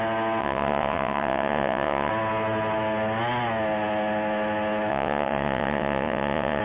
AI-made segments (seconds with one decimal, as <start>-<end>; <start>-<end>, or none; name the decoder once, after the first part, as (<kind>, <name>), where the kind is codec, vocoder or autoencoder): 0.4-2.1 (vocoder, WaveNeXt); 4.9-6.6